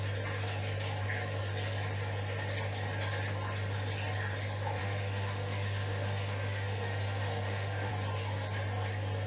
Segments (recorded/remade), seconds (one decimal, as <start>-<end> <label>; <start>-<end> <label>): 0.0-4.8 recorded; 4.8-7.9 remade; 7.9-9.3 recorded